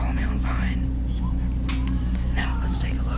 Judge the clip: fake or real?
real